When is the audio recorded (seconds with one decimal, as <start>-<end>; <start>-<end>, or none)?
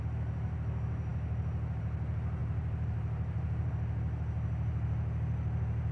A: 0.0-2.4; 3.7-5.9